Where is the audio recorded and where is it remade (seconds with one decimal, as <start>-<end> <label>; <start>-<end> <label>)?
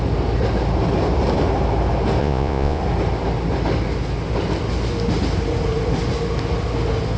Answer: 0.0-2.2 recorded; 2.2-2.8 remade; 2.8-7.2 recorded